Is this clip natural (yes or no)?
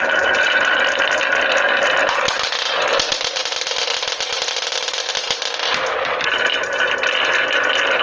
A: yes